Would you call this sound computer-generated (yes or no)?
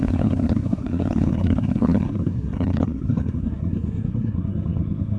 yes